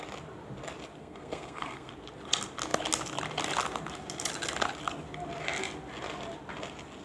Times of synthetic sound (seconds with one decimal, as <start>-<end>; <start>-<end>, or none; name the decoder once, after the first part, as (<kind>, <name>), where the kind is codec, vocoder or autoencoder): 1.0-1.9 (codec, SNAC)

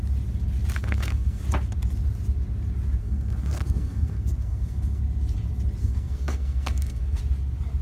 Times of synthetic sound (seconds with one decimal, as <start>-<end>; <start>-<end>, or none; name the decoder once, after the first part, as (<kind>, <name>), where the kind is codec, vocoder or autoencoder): 0.8-1.4 (codec, SNAC); 3.0-5.0; 5.8-7.2

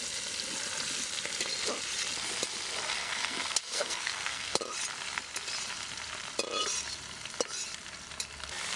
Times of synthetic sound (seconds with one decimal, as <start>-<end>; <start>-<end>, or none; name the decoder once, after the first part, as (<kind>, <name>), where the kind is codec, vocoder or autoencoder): 3.0-4.6 (codec, SNAC)